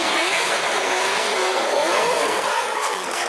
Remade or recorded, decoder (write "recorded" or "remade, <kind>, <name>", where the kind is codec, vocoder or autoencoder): remade, codec, SNAC